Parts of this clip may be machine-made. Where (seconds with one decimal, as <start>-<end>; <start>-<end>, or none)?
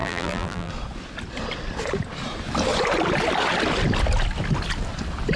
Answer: 0.0-0.7